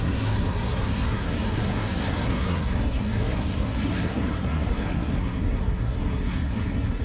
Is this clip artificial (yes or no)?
yes